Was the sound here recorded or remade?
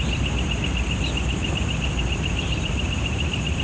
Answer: recorded